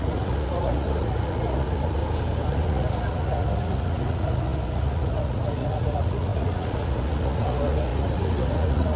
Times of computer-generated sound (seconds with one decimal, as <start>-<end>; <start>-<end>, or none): 0.0-2.0; 2.5-9.0